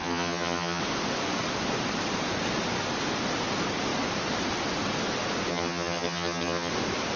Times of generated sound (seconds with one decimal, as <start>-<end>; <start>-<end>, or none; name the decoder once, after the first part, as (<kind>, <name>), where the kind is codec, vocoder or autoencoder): 0.0-0.8 (vocoder, HiFi-GAN); 5.5-6.7